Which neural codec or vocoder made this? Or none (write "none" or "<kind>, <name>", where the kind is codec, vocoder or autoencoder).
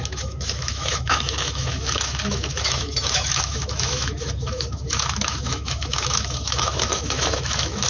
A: autoencoder, DAC-VAE